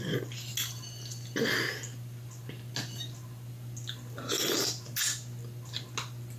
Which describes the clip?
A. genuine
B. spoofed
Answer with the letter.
A